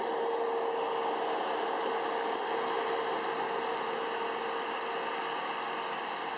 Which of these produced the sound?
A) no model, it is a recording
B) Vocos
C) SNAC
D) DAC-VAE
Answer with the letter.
A